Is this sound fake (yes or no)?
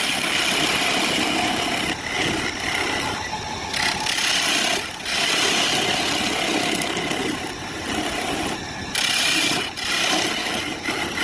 no